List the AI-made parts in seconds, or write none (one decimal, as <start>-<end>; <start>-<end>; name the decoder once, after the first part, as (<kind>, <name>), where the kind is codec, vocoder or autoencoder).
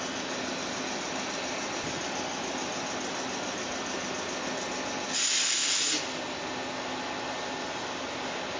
none